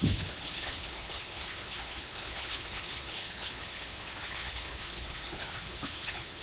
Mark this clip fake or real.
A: fake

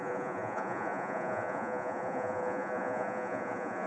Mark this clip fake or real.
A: fake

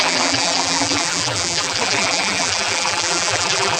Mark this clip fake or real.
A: fake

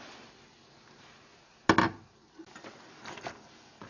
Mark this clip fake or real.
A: real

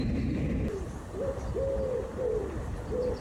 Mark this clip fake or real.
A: real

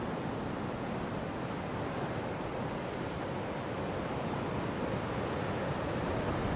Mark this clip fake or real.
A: real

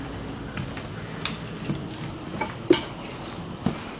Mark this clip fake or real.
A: real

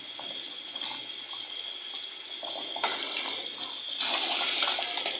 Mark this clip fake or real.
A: real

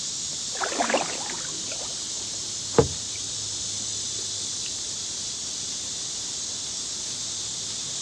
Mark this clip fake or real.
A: real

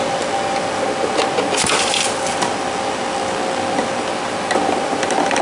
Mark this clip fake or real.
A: real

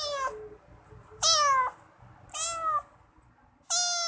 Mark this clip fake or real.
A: real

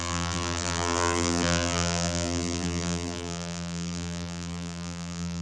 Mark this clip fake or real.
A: fake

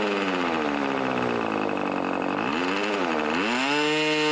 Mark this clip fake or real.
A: real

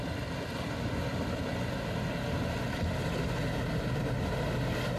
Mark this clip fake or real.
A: real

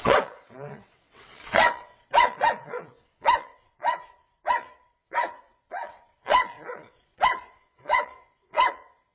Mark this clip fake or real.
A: fake